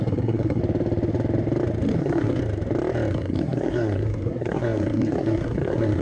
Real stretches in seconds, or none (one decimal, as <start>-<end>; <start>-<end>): 0.6-2.0; 2.4-3.1

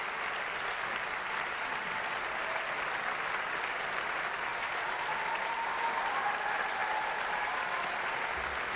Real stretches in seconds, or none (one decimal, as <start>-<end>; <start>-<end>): 0.0-8.8